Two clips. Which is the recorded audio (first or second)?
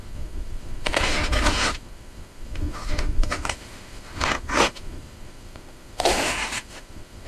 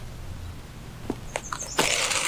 second